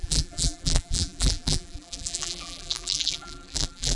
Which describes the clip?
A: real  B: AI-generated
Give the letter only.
B